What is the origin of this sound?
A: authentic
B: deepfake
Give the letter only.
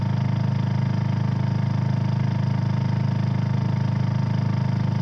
A